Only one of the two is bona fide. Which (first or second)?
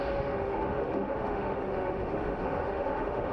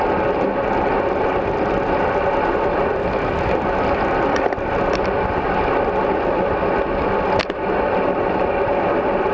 second